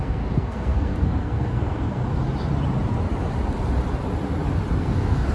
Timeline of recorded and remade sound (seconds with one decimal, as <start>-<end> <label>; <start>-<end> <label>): 0.0-2.0 remade; 2.0-4.8 recorded; 4.8-5.3 remade